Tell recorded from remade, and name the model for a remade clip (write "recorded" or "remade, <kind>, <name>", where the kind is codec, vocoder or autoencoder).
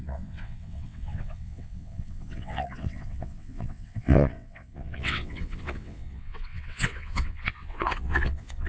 remade, vocoder, WaveNeXt